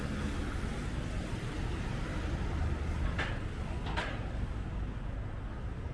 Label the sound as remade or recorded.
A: recorded